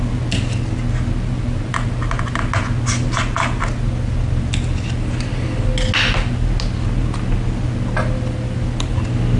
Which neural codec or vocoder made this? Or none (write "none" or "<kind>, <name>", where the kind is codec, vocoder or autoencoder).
none